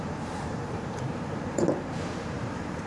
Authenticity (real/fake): fake